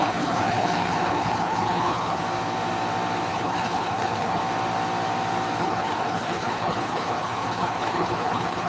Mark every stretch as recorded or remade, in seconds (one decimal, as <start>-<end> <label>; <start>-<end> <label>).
0.0-2.2 remade; 2.2-3.3 recorded; 3.3-4.4 remade; 4.4-5.6 recorded; 5.6-8.7 remade